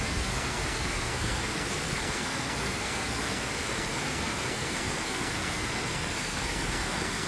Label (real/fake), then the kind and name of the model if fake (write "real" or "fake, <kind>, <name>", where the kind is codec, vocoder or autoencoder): fake, codec, SNAC